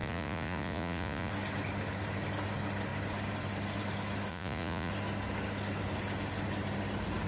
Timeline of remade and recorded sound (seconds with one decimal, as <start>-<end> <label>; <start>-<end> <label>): 0.0-1.3 remade; 1.3-4.3 recorded; 4.3-4.9 remade; 4.9-7.3 recorded